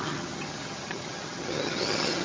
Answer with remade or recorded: remade